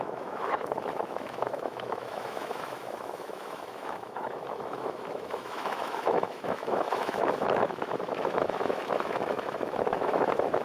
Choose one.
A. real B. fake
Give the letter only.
B